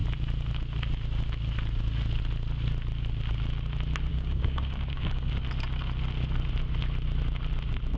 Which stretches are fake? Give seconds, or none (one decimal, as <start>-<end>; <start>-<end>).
4.1-5.3